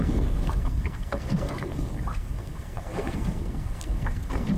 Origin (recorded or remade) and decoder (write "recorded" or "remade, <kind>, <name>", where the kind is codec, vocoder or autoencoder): remade, codec, SNAC